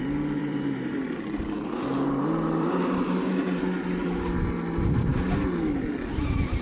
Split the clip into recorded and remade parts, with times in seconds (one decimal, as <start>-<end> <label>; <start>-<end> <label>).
0.0-0.4 recorded; 0.4-3.6 remade; 3.6-6.6 recorded